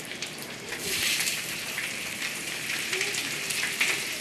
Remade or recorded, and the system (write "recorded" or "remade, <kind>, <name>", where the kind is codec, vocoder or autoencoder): remade, vocoder, BigVGAN v2